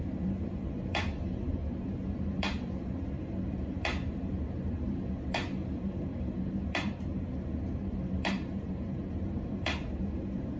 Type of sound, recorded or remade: remade